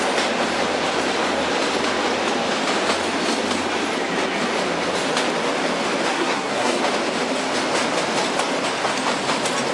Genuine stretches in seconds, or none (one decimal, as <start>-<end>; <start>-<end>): 0.0-6.1; 6.8-9.7